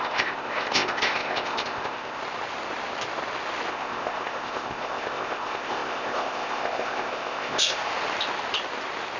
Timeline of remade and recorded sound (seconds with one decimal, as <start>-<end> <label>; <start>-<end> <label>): 0.0-2.2 remade; 2.2-3.7 recorded; 3.7-7.9 remade; 7.9-9.2 recorded